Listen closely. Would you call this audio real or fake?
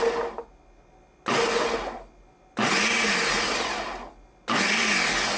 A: real